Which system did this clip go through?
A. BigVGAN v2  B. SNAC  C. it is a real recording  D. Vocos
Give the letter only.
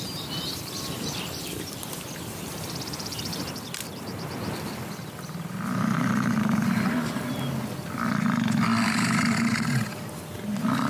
A